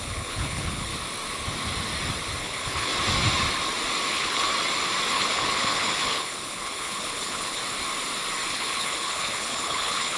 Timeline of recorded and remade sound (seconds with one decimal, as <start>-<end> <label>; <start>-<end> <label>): 0.0-0.9 remade; 0.9-2.4 recorded; 2.4-2.9 remade; 2.9-4.1 recorded; 4.1-4.5 remade; 4.5-5.1 recorded; 5.1-7.6 remade; 7.6-8.5 recorded; 8.5-10.2 remade